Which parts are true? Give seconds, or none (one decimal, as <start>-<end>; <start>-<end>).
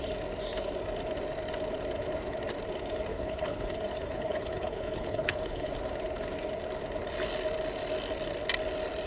0.0-3.1; 5.7-9.1